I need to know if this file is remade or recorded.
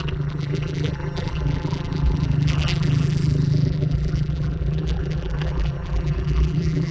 remade